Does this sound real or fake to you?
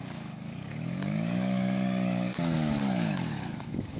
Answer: fake